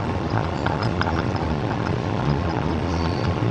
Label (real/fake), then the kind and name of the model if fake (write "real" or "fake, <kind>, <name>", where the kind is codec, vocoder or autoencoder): fake, vocoder, Vocos